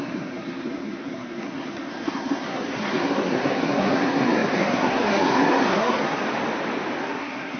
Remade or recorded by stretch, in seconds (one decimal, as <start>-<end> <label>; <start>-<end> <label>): 0.0-6.2 remade; 6.2-7.0 recorded; 7.0-7.6 remade